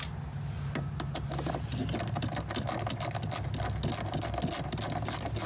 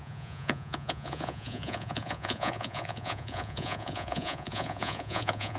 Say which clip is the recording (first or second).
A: first